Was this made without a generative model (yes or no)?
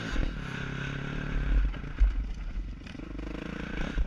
yes